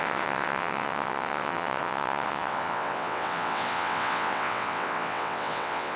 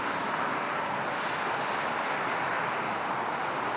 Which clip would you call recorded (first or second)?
second